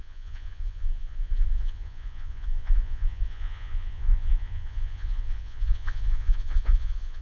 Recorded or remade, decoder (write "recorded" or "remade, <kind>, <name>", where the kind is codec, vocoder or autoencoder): remade, vocoder, Vocos